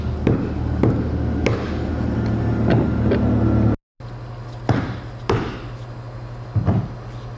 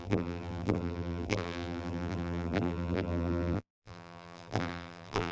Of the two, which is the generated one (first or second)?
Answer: second